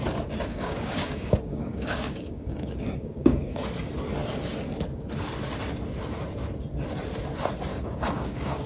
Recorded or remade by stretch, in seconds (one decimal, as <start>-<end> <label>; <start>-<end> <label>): 0.0-0.5 recorded; 0.5-3.6 remade; 3.6-7.7 recorded; 7.7-8.7 remade